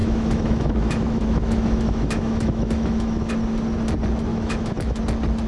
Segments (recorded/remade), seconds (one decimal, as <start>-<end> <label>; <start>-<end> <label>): 0.0-3.3 remade; 3.3-4.3 recorded; 4.3-5.0 remade; 5.0-5.5 recorded

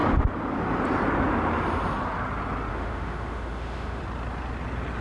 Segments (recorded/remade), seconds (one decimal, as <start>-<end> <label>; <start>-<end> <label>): 0.0-2.7 recorded; 2.7-4.0 remade; 4.0-5.0 recorded

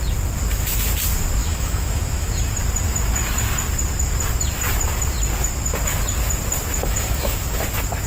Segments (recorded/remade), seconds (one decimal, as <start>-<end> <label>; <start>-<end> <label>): 0.0-1.4 recorded; 1.4-2.3 remade; 2.3-6.8 recorded; 6.8-7.6 remade; 7.6-8.1 recorded

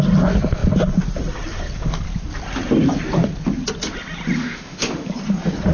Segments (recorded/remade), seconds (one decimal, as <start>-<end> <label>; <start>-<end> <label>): 0.0-4.4 recorded; 4.4-5.1 remade; 5.1-5.7 recorded

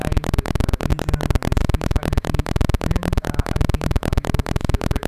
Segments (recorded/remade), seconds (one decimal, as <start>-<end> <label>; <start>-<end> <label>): 0.0-0.9 remade; 0.9-1.6 recorded; 1.6-5.1 remade

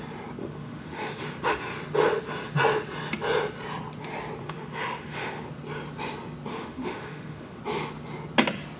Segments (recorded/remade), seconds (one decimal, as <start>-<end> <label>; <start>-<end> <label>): 0.0-0.4 recorded; 0.4-1.6 remade; 1.6-4.4 recorded; 4.4-5.4 remade; 5.4-6.5 recorded; 6.5-7.6 remade; 7.6-8.8 recorded